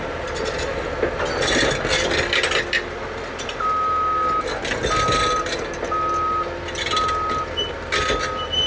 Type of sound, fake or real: real